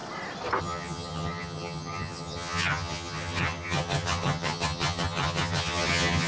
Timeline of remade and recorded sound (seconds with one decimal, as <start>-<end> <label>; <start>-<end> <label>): 0.0-0.6 recorded; 0.6-6.3 remade